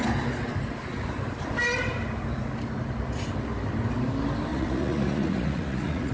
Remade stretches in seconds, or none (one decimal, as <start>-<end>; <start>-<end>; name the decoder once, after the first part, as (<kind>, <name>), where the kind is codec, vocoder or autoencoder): 4.5-6.1 (vocoder, Vocos)